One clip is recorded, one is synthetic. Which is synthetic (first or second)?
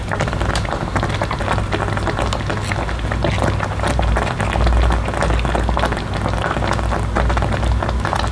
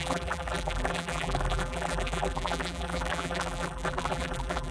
second